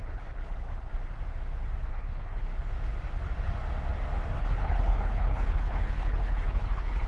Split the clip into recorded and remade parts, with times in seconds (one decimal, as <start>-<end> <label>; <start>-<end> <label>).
0.0-0.9 remade; 0.9-1.9 recorded; 1.9-2.5 remade; 2.5-4.4 recorded; 4.4-7.1 remade